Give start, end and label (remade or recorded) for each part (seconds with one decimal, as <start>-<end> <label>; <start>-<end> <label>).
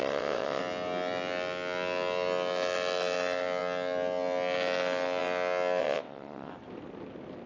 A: 0.0-0.6 remade; 0.6-5.8 recorded; 5.8-6.5 remade; 6.5-7.5 recorded